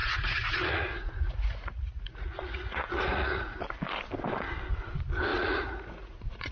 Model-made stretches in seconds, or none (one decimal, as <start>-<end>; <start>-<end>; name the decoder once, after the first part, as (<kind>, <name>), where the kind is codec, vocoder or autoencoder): 0.0-3.6 (vocoder, Vocos); 5.3-6.5